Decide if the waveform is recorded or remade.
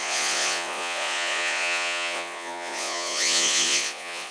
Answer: remade